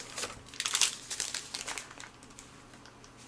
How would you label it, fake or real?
real